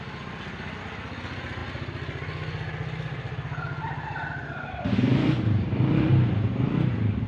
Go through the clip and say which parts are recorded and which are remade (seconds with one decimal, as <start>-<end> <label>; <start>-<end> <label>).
0.0-7.3 recorded